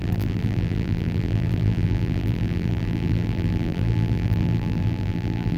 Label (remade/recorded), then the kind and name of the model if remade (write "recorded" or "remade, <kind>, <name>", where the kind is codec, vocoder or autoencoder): remade, vocoder, BigVGAN v2